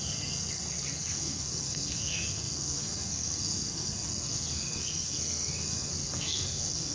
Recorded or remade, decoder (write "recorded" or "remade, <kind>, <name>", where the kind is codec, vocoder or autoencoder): remade, codec, SNAC